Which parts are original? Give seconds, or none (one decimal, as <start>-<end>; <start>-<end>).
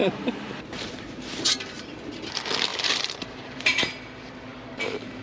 2.0-2.7; 3.9-5.2